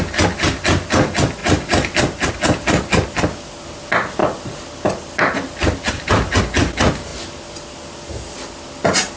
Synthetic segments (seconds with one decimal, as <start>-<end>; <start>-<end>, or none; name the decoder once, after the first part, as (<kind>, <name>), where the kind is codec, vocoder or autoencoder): 4.2-6.4 (vocoder, BigVGAN v2)